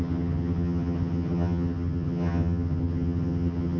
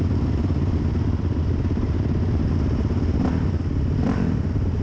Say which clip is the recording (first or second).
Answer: second